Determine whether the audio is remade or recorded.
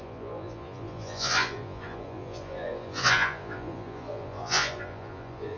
remade